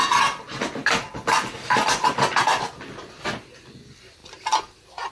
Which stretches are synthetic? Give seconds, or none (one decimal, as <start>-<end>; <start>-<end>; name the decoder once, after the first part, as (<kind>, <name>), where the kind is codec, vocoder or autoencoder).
none